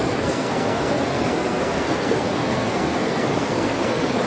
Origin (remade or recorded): remade